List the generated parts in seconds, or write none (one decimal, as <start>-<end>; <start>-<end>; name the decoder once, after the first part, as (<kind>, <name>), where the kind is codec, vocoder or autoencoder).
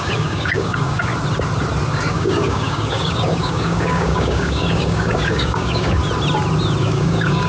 0.0-1.1 (codec, DAC); 2.1-6.0; 6.8-7.5